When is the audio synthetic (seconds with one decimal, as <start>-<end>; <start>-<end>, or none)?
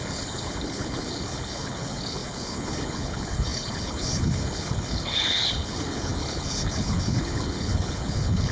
0.0-8.5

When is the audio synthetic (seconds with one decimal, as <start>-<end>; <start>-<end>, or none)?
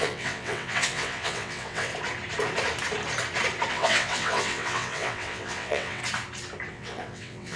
0.0-1.9; 3.7-6.0; 6.7-7.6